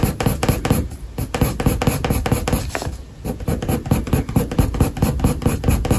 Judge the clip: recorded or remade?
recorded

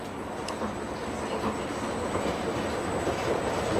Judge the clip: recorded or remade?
recorded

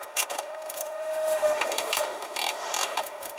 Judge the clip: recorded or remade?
remade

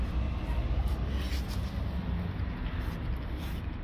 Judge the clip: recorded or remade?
recorded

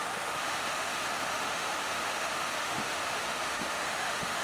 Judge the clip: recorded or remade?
remade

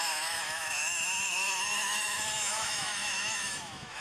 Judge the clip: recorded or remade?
remade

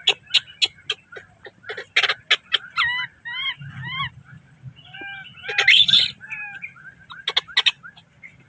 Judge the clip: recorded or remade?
recorded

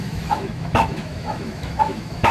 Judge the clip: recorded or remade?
remade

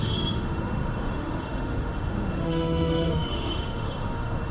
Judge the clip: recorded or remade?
remade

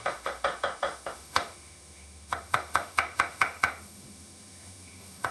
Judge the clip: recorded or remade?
remade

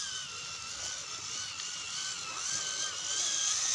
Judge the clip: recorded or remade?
recorded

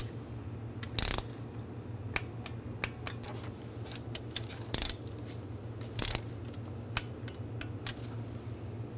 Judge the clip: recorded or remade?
recorded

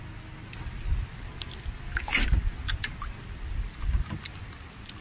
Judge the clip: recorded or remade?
recorded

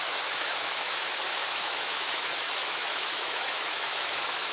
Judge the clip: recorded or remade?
remade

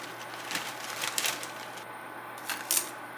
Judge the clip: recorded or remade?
recorded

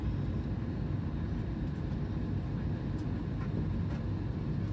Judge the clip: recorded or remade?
recorded